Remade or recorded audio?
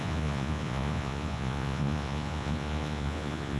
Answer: remade